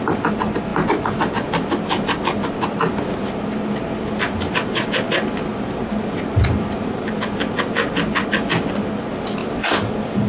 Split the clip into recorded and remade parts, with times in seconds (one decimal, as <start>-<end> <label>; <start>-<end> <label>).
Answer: 0.0-10.3 recorded